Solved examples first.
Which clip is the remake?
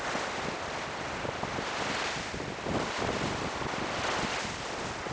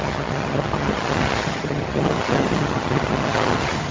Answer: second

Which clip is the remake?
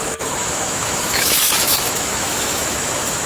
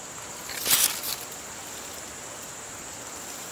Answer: first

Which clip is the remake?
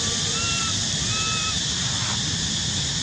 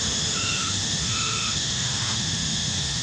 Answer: second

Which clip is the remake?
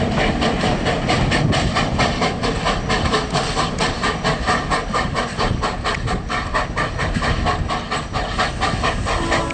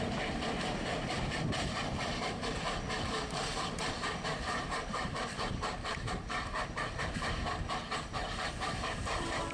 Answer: second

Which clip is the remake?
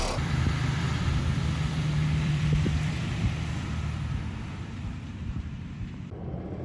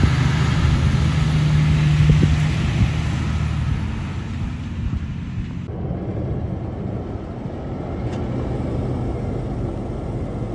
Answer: first